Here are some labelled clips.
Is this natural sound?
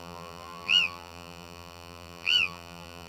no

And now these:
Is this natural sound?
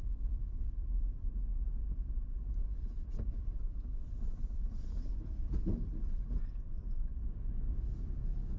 no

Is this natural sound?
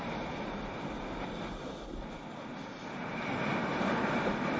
yes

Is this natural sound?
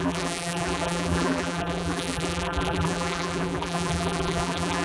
no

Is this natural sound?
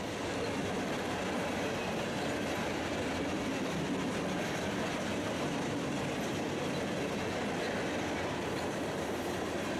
yes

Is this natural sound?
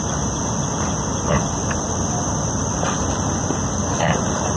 yes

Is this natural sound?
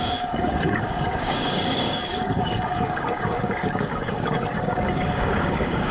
no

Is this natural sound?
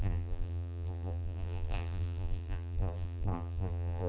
no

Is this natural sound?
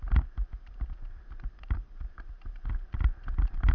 yes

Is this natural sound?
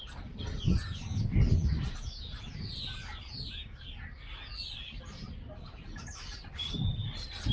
yes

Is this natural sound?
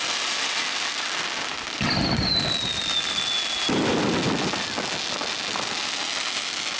yes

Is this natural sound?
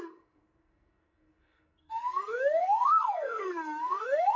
no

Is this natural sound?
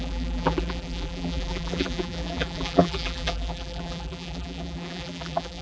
no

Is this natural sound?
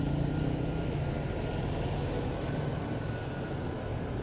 yes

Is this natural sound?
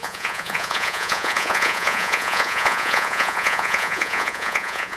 no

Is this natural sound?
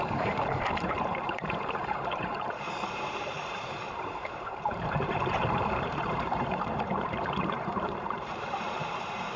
no